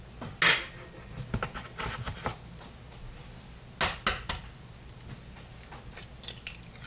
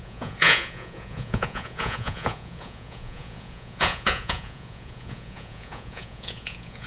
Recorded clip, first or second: first